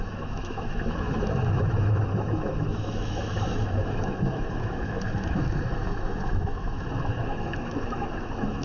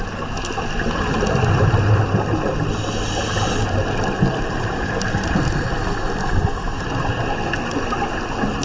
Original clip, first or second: second